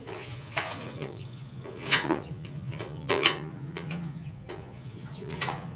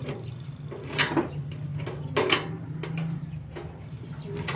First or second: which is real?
second